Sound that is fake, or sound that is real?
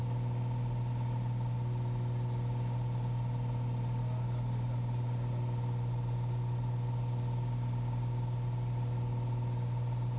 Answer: real